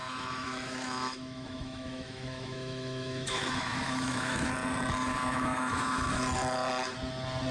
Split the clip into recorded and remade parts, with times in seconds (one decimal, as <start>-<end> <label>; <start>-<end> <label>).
0.0-4.5 remade; 4.5-5.0 recorded; 5.0-6.2 remade; 6.2-7.5 recorded